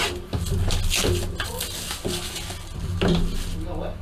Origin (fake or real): real